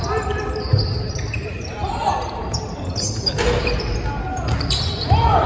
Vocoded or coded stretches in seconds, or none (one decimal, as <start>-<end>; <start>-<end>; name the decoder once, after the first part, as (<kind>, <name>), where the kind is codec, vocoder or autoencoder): 0.0-3.3 (vocoder, BigVGAN v2)